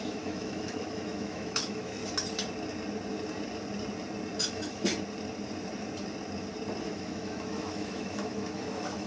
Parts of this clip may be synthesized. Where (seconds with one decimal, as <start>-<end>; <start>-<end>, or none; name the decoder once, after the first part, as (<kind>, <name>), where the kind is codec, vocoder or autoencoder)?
0.0-2.0 (autoencoder, DAC-VAE); 4.4-4.9; 6.8-9.1

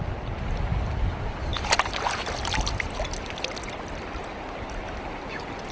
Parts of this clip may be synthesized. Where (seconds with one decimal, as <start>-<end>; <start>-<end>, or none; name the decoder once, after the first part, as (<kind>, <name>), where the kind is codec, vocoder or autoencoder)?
none

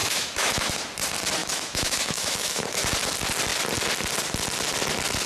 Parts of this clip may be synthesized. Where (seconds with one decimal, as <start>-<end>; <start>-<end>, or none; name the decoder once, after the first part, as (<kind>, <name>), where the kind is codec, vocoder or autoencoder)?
0.0-0.7 (autoencoder, DAC-VAE); 1.4-2.8

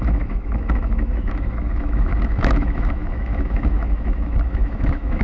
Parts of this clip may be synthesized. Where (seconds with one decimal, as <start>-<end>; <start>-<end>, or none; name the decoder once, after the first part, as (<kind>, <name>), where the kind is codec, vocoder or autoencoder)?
0.0-5.2 (autoencoder, DAC-VAE)

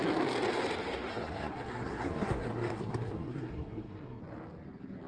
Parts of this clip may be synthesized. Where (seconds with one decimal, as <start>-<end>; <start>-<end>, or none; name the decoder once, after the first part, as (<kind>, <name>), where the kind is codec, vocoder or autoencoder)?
1.1-4.2 (codec, SNAC)

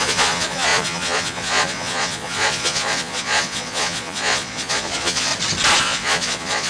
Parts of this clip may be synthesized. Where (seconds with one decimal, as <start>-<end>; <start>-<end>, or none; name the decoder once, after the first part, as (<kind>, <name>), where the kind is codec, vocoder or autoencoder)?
0.0-5.3 (vocoder, Vocos); 5.8-6.7

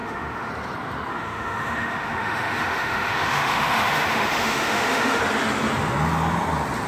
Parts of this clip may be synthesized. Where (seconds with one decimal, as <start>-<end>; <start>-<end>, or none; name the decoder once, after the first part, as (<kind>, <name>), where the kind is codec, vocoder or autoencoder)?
0.0-0.5 (autoencoder, DAC-VAE); 1.1-5.2

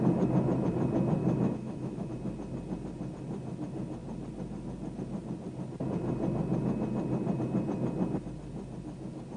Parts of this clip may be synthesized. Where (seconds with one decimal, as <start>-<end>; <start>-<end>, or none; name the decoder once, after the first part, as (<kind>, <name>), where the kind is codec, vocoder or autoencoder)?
1.2-2.1 (autoencoder, DAC-VAE)